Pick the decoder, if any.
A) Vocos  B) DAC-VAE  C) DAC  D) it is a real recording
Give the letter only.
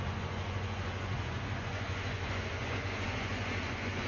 A